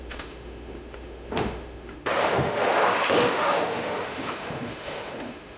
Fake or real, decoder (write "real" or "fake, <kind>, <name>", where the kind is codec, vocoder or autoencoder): fake, autoencoder, DAC-VAE